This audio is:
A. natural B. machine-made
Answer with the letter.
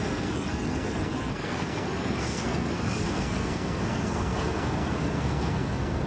B